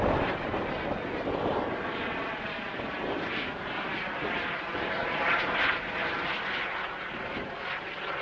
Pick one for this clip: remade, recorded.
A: recorded